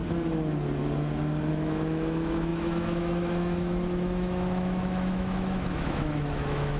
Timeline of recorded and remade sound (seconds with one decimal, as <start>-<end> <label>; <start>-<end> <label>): 0.0-1.5 recorded; 1.5-6.8 remade